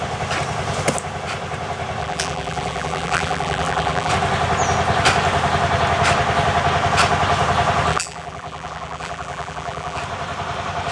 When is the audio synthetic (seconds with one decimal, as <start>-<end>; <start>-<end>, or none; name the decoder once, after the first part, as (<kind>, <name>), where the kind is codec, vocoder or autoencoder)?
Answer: 2.0-4.1 (vocoder, BigVGAN v2); 7.9-10.0